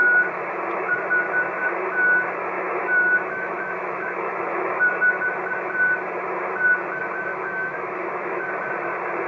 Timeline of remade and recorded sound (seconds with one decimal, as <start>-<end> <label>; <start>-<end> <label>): 0.0-0.9 remade; 0.9-1.6 recorded; 1.6-5.2 remade; 5.2-7.3 recorded; 7.3-8.4 remade; 8.4-9.3 recorded